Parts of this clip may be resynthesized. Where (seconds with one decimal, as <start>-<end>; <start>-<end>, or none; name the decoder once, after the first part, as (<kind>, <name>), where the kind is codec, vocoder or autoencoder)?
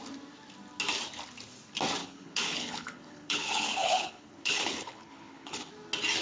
2.0-5.7 (codec, HILCodec)